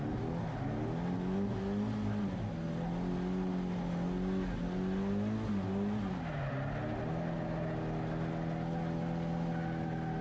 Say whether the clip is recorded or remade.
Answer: recorded